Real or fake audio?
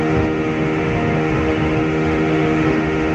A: fake